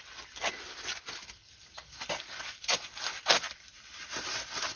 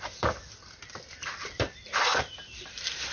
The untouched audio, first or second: first